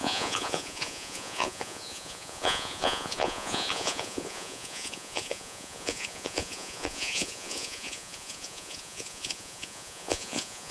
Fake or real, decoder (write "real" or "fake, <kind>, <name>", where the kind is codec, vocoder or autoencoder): fake, vocoder, Vocos